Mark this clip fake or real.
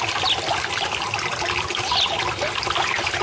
real